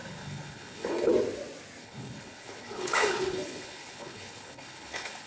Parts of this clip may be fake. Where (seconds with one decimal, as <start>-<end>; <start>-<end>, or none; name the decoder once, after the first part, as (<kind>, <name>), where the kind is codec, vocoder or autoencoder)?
0.0-1.1 (codec, HILCodec); 1.8-5.3